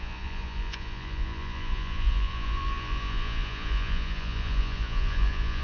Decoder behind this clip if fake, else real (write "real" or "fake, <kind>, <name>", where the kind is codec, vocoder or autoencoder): fake, vocoder, Vocos